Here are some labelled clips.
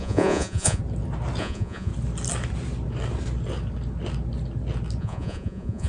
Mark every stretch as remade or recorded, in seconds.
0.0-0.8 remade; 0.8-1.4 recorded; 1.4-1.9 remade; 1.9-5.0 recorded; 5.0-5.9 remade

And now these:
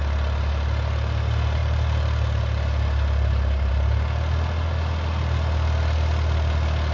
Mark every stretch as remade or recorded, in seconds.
0.0-6.9 recorded

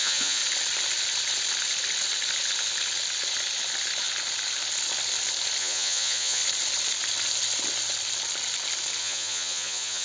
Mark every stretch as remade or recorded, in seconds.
0.0-0.4 remade; 0.4-5.6 recorded; 5.6-6.4 remade; 6.4-9.0 recorded; 9.0-10.0 remade

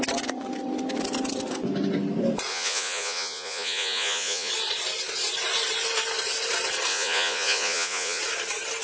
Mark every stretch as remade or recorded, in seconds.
0.0-2.5 recorded; 2.5-4.5 remade; 4.5-6.9 recorded; 6.9-8.2 remade; 8.2-8.8 recorded

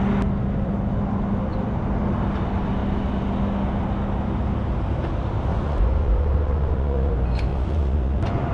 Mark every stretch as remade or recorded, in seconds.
0.0-5.5 recorded; 5.5-7.1 remade; 7.1-7.5 recorded; 7.5-8.5 remade